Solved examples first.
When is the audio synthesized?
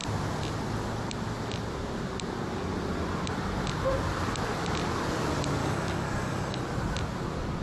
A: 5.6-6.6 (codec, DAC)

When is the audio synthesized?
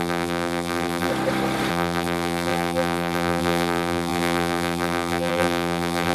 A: 0.0-1.1 (vocoder, BigVGAN v2); 1.7-6.1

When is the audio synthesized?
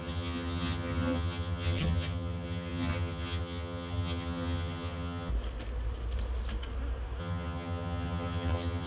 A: 0.0-5.3 (vocoder, HiFi-GAN); 7.2-8.9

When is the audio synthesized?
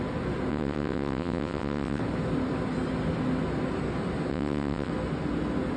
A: 0.5-2.0 (vocoder, WaveNeXt); 4.3-4.9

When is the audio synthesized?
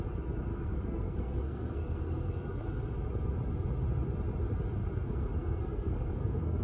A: 0.5-2.6 (codec, SNAC); 4.8-6.6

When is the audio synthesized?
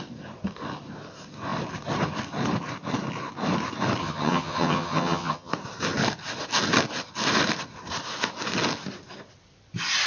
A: 4.0-5.5 (vocoder, HiFi-GAN)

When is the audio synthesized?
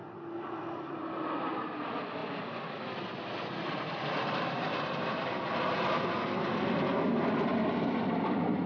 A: none